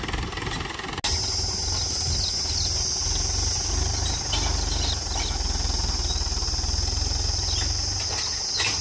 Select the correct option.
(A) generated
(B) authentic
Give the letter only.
B